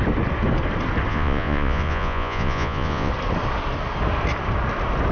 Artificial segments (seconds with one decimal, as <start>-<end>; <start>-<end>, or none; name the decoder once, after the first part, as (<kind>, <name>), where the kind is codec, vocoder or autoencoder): 1.1-3.1 (vocoder, Vocos)